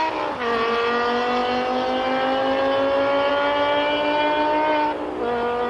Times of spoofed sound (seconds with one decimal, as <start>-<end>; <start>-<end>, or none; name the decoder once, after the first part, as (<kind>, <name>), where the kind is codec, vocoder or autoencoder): none